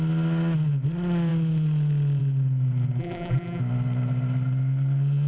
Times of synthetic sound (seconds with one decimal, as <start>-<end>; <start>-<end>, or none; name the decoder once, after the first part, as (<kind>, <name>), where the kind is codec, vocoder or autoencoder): 3.0-3.6 (vocoder, BigVGAN v2)